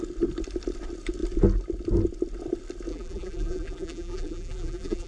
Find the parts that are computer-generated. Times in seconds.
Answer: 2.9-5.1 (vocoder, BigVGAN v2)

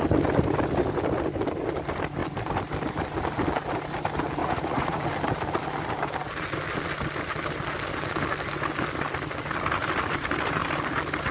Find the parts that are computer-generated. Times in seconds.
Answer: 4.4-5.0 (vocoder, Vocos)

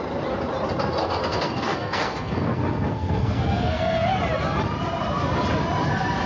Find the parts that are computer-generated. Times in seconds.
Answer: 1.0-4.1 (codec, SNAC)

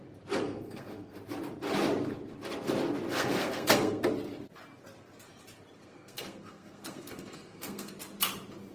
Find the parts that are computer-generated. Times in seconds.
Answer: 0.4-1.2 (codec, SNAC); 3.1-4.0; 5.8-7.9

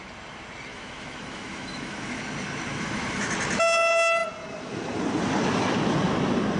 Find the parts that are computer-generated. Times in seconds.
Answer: 0.7-2.2 (autoencoder, DAC-VAE); 2.7-3.3

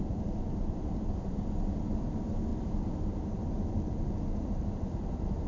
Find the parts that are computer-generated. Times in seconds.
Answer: 0.0-2.5 (vocoder, BigVGAN v2); 4.9-5.5

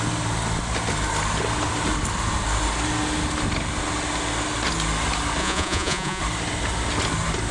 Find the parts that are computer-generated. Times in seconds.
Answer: 5.4-6.2 (vocoder, Vocos)

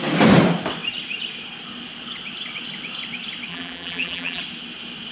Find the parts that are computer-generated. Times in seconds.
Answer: 3.5-4.4 (vocoder, BigVGAN v2)